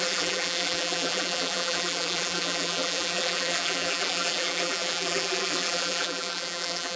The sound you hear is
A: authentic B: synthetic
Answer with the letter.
B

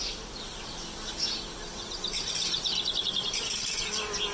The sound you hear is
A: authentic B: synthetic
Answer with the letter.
A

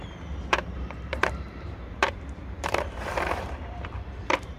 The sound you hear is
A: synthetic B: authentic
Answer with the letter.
A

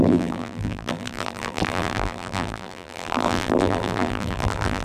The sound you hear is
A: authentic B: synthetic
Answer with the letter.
B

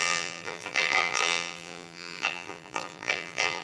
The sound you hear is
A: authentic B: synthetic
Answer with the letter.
B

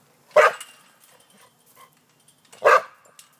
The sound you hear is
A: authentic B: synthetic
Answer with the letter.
A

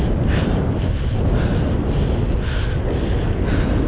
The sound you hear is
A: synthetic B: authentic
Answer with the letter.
B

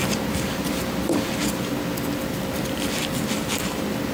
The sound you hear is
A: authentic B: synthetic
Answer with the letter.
B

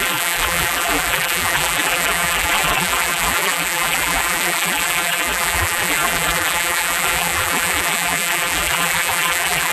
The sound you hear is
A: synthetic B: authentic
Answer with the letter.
A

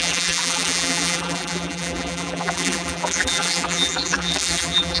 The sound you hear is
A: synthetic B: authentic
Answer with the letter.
A